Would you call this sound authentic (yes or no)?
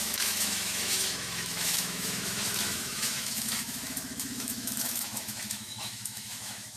no